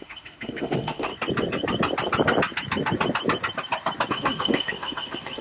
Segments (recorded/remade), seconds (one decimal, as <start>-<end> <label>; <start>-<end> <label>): 0.0-1.1 remade; 1.1-4.1 recorded; 4.1-5.4 remade